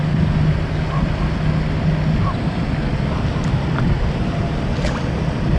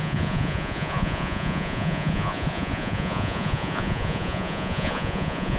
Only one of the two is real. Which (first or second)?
first